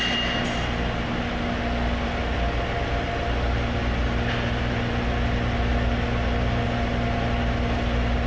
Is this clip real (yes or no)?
yes